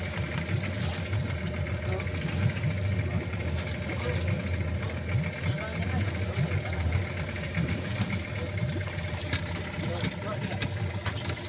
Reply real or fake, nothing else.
real